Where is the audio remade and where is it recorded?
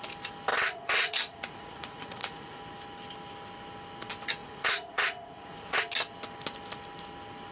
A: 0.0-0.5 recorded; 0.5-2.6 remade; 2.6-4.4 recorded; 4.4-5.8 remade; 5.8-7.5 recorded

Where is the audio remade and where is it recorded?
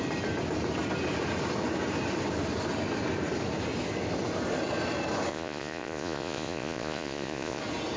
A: 0.0-5.3 recorded; 5.3-7.6 remade; 7.6-8.0 recorded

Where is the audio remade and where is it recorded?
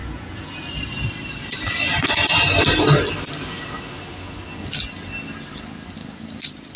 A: 0.0-0.6 remade; 0.6-6.8 recorded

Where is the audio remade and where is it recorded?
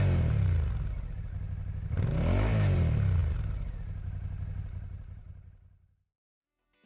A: 0.0-6.9 recorded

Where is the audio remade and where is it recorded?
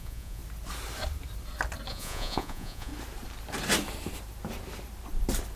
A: 0.0-0.4 remade; 0.4-1.9 recorded; 1.9-2.9 remade; 2.9-5.6 recorded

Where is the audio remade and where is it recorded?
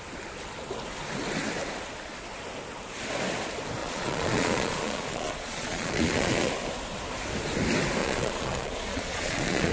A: 0.0-3.8 recorded; 3.8-6.5 remade; 6.5-8.0 recorded; 8.0-9.7 remade